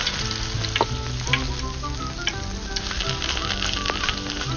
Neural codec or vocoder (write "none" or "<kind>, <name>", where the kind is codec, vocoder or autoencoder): none